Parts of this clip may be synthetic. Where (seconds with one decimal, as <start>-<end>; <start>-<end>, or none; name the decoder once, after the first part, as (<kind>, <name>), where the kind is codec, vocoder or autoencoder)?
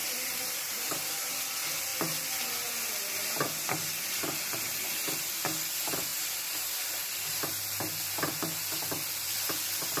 0.0-1.4 (vocoder, BigVGAN v2)